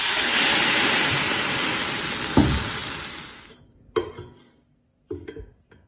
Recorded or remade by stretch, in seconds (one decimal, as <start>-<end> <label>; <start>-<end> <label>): 0.0-5.9 recorded